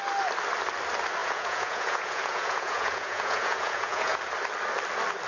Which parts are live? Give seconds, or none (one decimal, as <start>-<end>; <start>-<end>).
0.0-1.2; 4.2-5.3